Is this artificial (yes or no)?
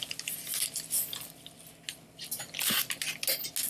no